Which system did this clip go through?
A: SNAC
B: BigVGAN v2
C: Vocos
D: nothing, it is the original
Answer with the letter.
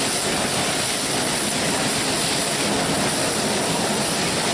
D